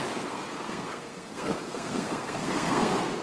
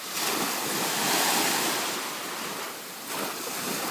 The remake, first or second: first